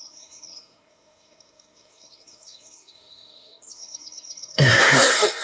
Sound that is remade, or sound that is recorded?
remade